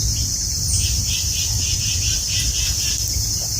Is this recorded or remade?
recorded